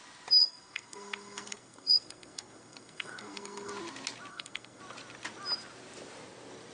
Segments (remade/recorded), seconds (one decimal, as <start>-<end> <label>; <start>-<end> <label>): 0.0-0.4 recorded; 0.4-3.7 remade; 3.7-4.3 recorded; 4.3-4.8 remade; 4.8-6.7 recorded